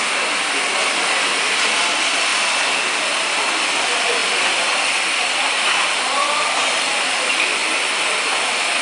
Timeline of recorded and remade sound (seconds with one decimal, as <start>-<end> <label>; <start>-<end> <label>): 0.0-4.2 recorded; 4.2-5.7 remade; 5.7-8.8 recorded